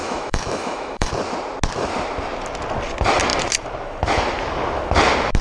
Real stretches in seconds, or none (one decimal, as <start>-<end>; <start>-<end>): 1.1-5.4